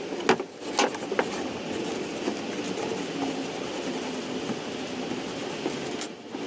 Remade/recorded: recorded